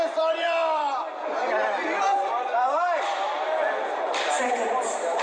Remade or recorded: remade